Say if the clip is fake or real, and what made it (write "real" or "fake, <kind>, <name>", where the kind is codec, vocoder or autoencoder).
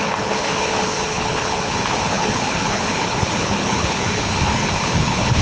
fake, codec, HILCodec